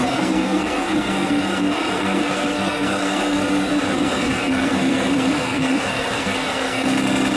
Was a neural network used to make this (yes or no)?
yes